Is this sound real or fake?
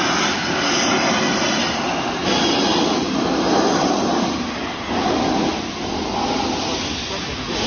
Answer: real